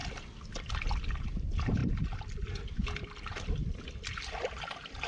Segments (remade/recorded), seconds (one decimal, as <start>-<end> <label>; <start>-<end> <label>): 0.0-5.1 recorded